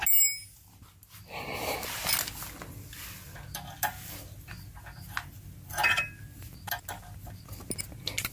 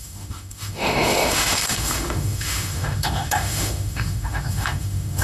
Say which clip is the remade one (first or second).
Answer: second